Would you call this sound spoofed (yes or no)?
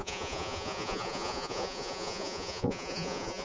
yes